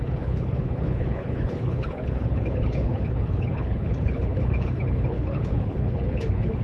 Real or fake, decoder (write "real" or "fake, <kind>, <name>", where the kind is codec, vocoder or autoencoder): fake, codec, HILCodec